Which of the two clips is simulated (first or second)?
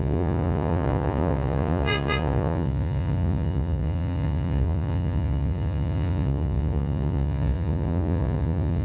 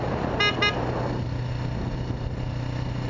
first